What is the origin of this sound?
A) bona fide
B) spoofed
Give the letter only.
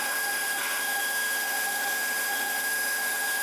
B